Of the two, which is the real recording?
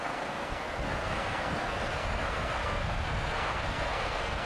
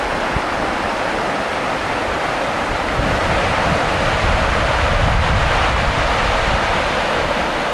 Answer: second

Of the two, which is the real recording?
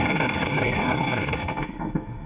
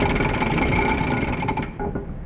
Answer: second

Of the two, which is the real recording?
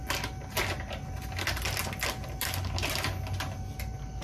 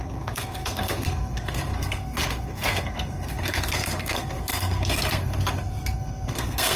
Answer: first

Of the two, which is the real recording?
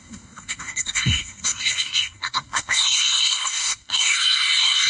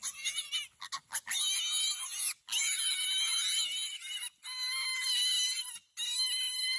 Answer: second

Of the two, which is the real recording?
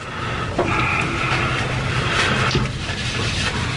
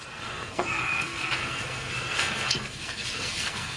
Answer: first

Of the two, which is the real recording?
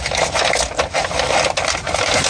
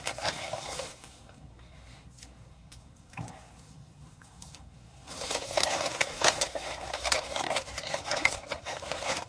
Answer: first